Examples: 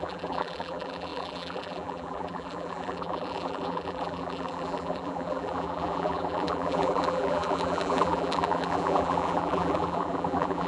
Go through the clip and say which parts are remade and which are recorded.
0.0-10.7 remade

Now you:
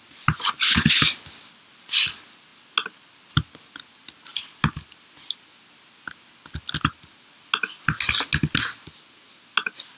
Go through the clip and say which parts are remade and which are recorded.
0.0-10.0 recorded

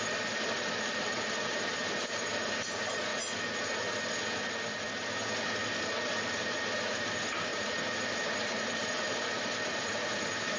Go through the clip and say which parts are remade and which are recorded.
0.0-3.1 remade; 3.1-6.9 recorded; 6.9-10.6 remade

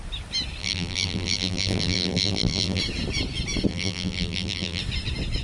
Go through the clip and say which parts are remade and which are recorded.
0.0-0.6 recorded; 0.6-2.8 remade; 2.8-3.7 recorded; 3.7-4.8 remade; 4.8-5.4 recorded